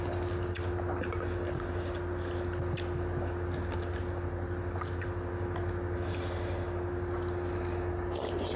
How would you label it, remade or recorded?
recorded